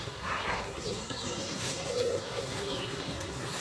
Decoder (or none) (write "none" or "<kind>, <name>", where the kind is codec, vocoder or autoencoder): codec, SNAC